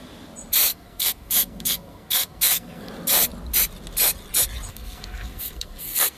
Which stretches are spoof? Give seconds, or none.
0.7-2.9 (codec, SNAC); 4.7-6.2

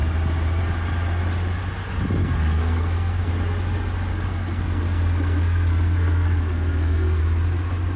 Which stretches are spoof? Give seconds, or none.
2.2-3.3 (codec, SNAC); 4.1-7.2